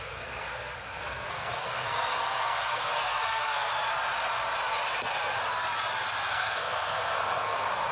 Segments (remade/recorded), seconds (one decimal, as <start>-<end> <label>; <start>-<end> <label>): 0.0-3.7 remade; 3.7-6.3 recorded; 6.3-7.9 remade

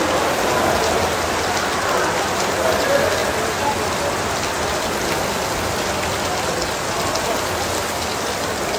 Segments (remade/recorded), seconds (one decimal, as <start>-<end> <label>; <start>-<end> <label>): 0.0-8.8 recorded

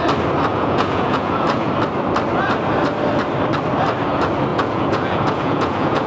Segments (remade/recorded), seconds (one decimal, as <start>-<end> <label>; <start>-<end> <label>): 0.0-0.5 recorded; 0.5-1.7 remade; 1.7-4.5 recorded; 4.5-6.1 remade

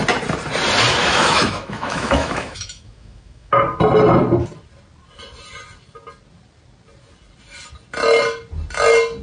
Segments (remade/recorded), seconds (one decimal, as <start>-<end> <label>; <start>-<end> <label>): 0.0-1.0 recorded; 1.0-3.5 remade; 3.5-9.2 recorded

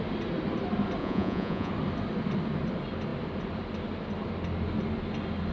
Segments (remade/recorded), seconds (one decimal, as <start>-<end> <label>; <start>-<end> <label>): 0.0-1.0 recorded; 1.0-1.7 remade; 1.7-5.5 recorded

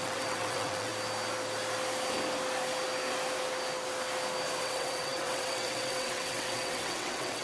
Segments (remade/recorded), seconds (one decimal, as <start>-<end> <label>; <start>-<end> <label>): 0.0-0.9 remade; 0.9-4.6 recorded; 4.6-7.4 remade

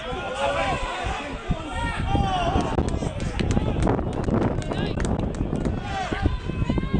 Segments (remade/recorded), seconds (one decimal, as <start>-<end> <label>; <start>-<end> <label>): 0.0-7.0 recorded